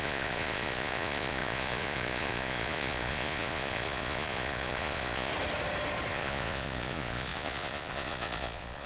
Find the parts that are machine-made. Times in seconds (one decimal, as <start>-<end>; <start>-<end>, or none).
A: 0.0-5.3; 6.1-8.9